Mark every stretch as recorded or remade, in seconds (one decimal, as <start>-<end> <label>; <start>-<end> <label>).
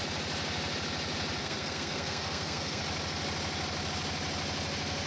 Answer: 0.0-1.4 recorded; 1.4-2.8 remade; 2.8-5.1 recorded